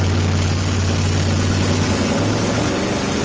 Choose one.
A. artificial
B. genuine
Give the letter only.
B